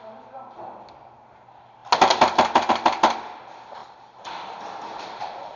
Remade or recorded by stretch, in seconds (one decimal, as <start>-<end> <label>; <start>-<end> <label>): 0.0-3.8 recorded; 3.8-5.6 remade